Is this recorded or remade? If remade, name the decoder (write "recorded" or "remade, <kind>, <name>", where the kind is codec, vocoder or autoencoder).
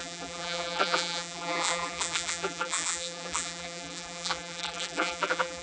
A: remade, vocoder, BigVGAN v2